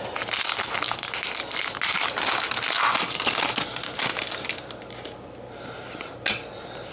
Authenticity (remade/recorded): recorded